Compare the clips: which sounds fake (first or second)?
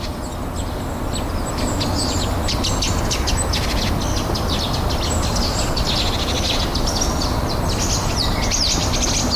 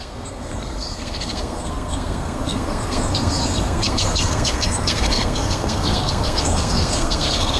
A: second